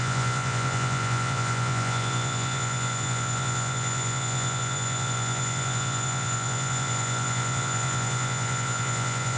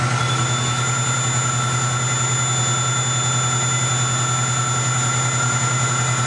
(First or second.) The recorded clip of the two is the second